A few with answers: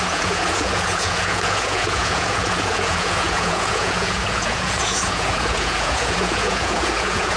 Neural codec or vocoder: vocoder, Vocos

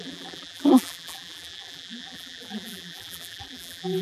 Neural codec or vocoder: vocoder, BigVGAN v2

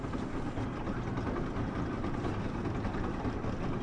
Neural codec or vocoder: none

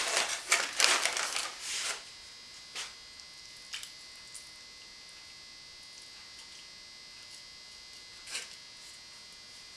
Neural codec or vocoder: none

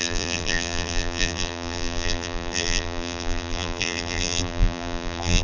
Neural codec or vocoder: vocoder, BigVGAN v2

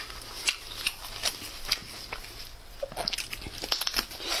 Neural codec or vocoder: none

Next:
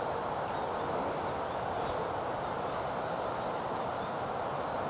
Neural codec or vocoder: none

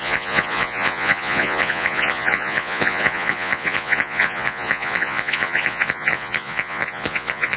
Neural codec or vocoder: vocoder, Vocos